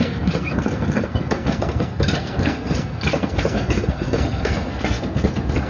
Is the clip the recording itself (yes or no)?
no